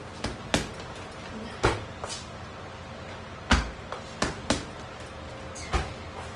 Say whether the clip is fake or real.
real